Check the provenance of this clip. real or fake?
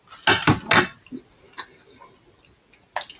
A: real